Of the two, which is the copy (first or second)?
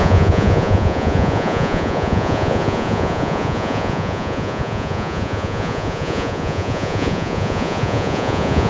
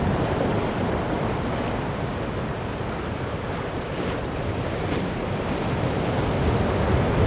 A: first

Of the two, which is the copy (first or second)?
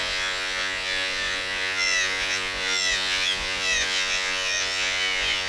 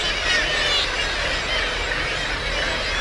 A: first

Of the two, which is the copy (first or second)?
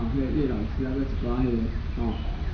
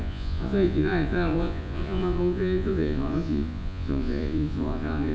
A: second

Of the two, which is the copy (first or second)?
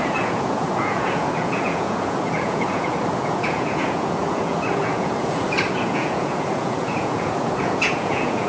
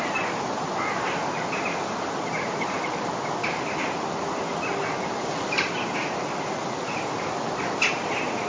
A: first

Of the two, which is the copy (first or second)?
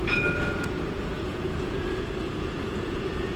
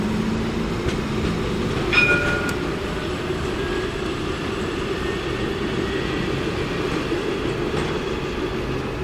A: first